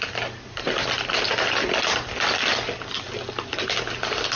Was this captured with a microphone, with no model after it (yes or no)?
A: yes